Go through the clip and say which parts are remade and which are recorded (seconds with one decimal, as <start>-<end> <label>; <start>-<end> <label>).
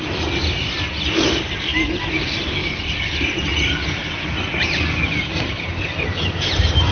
0.0-6.9 recorded